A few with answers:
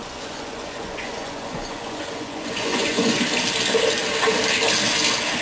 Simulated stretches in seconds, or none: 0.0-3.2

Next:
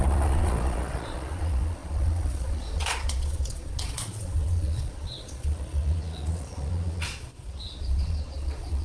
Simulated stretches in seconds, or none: 0.0-8.8

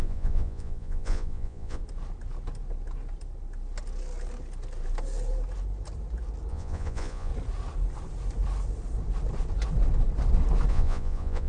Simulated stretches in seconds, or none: 0.0-1.8; 6.5-7.3; 10.7-11.5